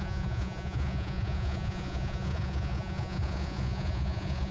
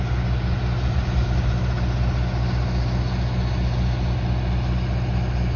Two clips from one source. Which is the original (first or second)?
second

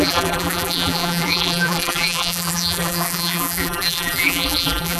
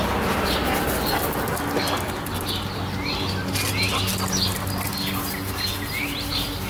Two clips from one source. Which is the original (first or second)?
second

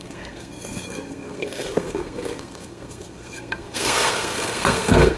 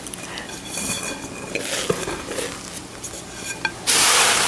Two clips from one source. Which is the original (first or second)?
second